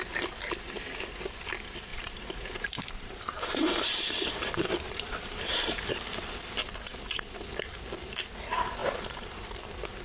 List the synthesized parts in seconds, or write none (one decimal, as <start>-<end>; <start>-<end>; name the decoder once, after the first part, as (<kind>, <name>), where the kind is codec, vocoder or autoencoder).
1.9-6.0 (vocoder, BigVGAN v2); 8.8-9.4